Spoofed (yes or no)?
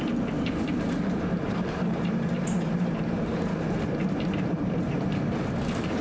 yes